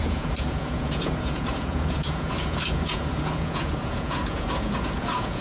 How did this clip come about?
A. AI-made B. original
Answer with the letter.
A